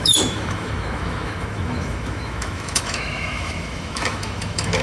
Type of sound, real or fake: fake